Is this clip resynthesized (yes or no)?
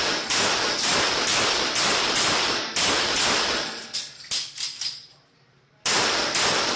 no